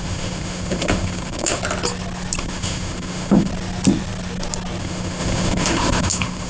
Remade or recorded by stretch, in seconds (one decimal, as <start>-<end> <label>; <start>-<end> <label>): 0.0-1.6 remade; 1.6-2.4 recorded; 2.4-3.5 remade; 3.5-4.8 recorded; 4.8-6.5 remade